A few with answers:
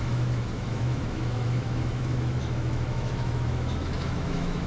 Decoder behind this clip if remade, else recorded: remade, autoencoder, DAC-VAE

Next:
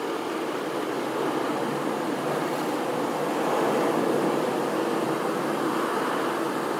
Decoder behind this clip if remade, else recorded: recorded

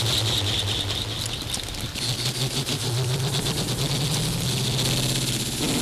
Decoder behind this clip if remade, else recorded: recorded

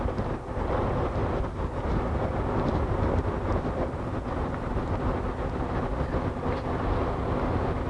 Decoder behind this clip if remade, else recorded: recorded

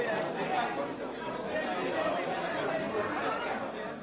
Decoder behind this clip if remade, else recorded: recorded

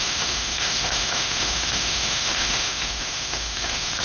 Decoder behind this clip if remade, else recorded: remade, autoencoder, DAC-VAE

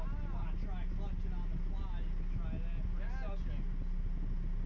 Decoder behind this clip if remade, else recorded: recorded